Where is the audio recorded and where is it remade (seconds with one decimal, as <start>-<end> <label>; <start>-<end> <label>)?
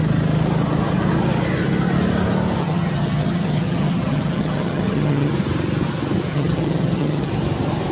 0.0-2.6 recorded; 2.6-5.3 remade; 5.3-6.3 recorded; 6.3-7.3 remade; 7.3-7.9 recorded